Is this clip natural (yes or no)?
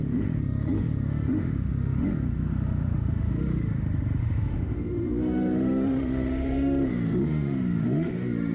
no